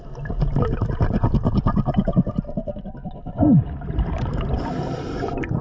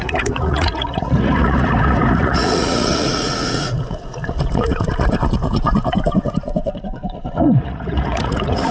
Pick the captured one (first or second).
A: first